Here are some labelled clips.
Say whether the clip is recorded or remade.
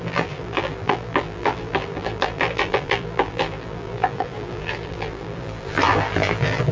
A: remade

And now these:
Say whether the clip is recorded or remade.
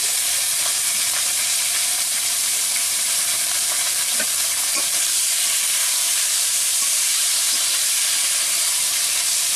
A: remade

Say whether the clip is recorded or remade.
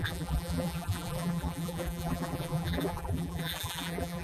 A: remade